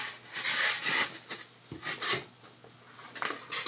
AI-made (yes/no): no